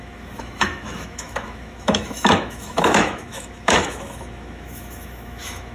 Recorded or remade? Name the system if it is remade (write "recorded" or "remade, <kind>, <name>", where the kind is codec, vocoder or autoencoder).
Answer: remade, autoencoder, DAC-VAE